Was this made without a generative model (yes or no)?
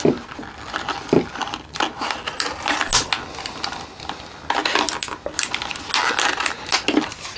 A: yes